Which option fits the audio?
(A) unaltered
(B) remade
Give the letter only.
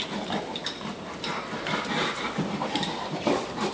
B